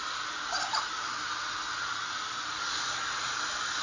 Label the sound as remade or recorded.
recorded